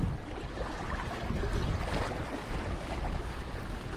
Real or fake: real